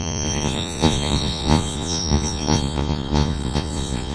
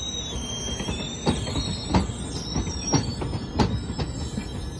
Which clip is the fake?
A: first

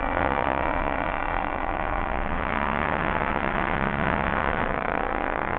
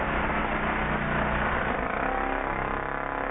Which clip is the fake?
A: first